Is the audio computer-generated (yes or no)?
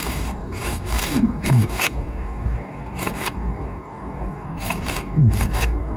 yes